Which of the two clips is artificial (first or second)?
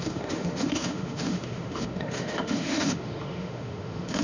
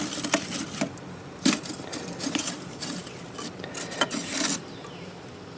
first